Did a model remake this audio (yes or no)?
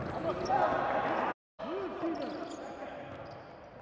no